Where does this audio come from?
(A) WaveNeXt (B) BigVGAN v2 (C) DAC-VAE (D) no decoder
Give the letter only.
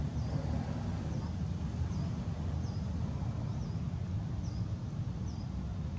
D